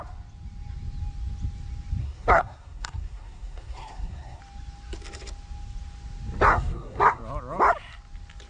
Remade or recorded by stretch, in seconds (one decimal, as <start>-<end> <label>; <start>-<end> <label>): 0.0-2.0 recorded; 2.0-4.4 remade; 4.4-6.5 recorded; 6.5-7.2 remade; 7.2-8.5 recorded